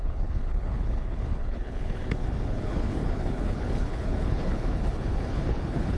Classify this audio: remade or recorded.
remade